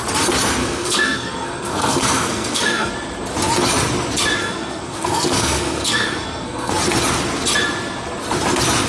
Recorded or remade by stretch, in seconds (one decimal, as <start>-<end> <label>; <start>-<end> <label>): 0.0-0.6 recorded; 0.6-2.9 remade; 2.9-4.4 recorded; 4.4-6.7 remade; 6.7-8.9 recorded